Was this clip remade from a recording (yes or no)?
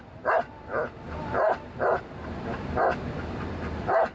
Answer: no